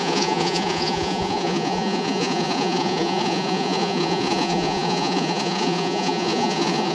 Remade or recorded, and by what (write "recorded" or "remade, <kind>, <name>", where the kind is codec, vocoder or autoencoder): remade, vocoder, Vocos